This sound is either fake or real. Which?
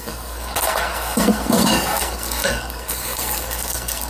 fake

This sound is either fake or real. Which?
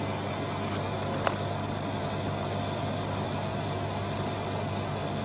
real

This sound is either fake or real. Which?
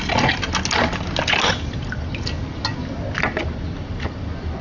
real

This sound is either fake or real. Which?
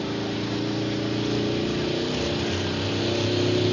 real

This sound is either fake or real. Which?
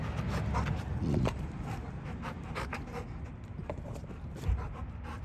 real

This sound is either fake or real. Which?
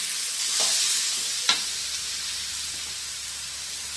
real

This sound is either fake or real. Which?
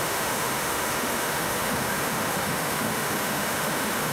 fake